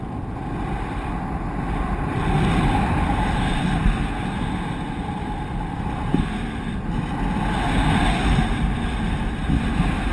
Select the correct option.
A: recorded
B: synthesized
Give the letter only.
A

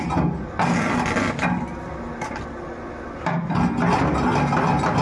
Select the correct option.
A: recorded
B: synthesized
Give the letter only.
A